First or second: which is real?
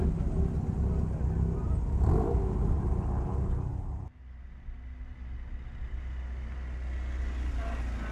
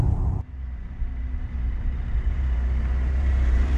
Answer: first